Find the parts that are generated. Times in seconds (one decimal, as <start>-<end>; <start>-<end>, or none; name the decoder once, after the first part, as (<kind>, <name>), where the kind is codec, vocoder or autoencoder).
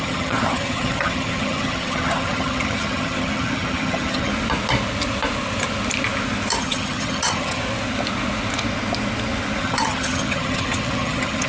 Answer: 0.0-4.3 (vocoder, HiFi-GAN); 6.6-7.6; 9.6-11.5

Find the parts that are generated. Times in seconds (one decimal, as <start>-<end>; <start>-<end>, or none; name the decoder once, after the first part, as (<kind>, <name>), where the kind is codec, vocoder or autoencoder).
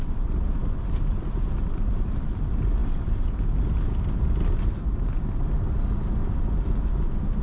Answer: none